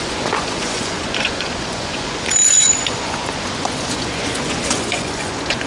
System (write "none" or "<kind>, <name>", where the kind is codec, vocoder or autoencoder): vocoder, Vocos